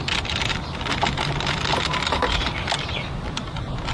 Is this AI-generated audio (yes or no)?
no